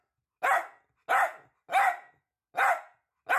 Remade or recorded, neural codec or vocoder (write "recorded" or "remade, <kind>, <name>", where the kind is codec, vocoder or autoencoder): recorded